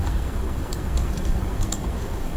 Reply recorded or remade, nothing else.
remade